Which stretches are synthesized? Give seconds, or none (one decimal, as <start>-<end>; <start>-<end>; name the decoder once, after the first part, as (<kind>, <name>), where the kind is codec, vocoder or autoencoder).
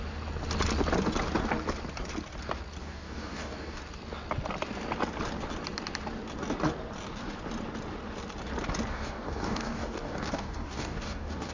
2.8-3.8 (codec, DAC); 8.9-11.5